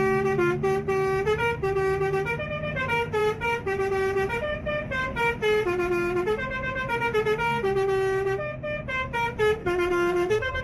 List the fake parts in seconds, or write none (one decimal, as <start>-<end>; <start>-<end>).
9.6-10.6